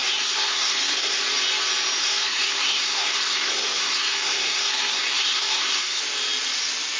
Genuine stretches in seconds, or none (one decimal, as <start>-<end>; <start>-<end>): 1.2-2.0; 6.0-7.0